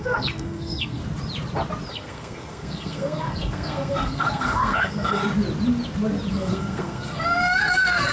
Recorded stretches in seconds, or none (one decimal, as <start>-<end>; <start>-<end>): 1.0-1.9; 5.2-6.3